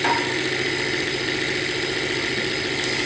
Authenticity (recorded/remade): recorded